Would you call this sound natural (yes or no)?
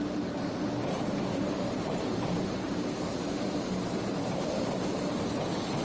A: no